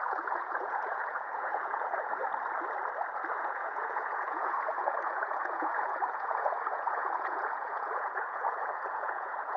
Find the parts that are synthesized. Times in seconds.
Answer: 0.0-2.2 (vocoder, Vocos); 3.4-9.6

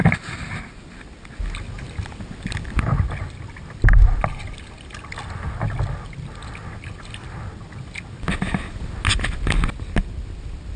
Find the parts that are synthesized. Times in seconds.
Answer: none

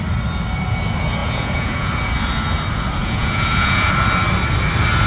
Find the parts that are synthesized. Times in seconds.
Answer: 1.2-1.9 (vocoder, Vocos); 3.0-3.9

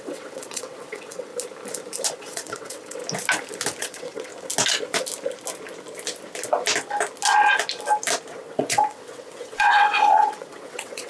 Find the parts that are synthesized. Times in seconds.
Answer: 0.0-1.3 (vocoder, WaveNeXt); 2.1-3.0; 3.8-4.3; 8.3-11.1